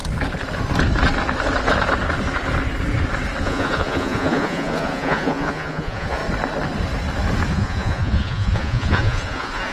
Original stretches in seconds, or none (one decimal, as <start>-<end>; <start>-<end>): 0.0-3.4; 6.2-7.5